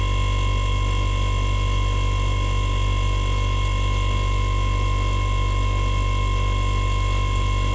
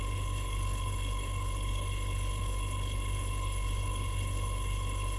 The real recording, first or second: first